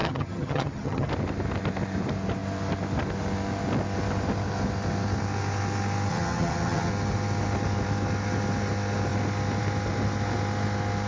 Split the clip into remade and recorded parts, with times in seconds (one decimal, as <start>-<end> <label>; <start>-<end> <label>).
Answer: 0.0-1.1 remade; 1.1-6.1 recorded; 6.1-6.9 remade; 6.9-11.1 recorded